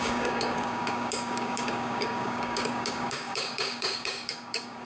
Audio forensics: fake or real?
fake